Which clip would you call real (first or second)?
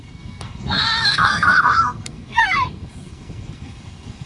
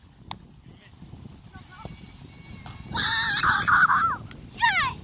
second